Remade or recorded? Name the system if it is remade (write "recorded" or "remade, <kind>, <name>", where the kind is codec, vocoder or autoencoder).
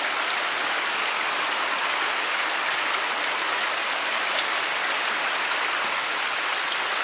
recorded